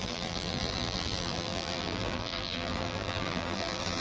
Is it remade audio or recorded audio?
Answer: remade